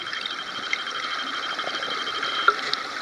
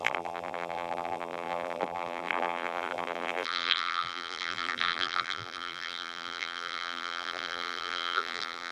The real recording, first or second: first